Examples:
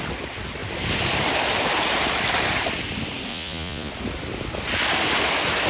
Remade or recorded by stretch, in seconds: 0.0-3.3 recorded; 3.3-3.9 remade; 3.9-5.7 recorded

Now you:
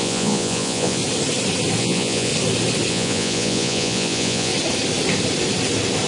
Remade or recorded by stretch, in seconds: 0.0-1.0 remade; 1.0-1.8 recorded; 1.8-2.3 remade; 2.3-2.9 recorded; 2.9-4.5 remade; 4.5-6.1 recorded

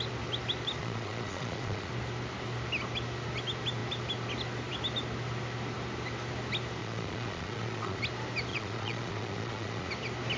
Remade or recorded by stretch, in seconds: 0.0-0.8 recorded; 0.8-1.9 remade; 1.9-6.8 recorded; 6.8-8.0 remade; 8.0-8.5 recorded; 8.5-9.9 remade; 9.9-10.4 recorded